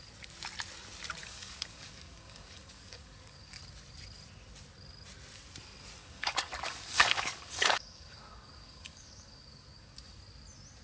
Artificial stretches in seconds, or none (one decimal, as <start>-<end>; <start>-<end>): 1.2-3.6; 6.0-10.2